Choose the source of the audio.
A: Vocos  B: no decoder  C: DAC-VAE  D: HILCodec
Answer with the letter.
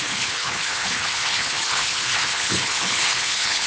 D